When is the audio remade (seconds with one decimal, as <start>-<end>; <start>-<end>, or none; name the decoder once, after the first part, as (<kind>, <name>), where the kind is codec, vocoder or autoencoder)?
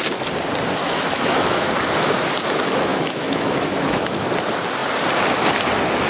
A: 0.8-1.7 (autoencoder, DAC-VAE); 2.9-4.3